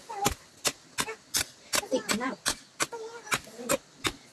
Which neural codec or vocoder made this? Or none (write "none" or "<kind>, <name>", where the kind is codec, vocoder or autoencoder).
none